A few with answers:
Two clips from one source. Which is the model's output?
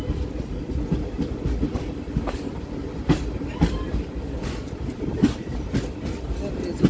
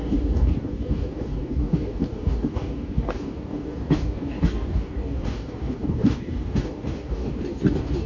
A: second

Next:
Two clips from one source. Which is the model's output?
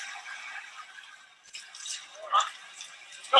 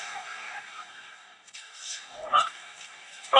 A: second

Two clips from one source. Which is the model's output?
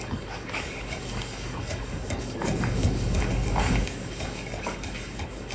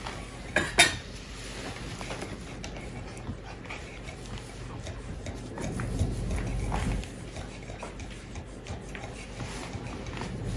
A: first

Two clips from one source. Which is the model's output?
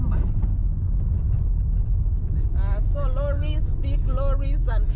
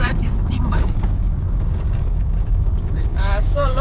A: second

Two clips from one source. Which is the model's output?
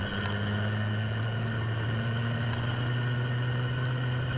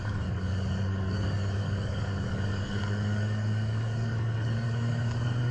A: second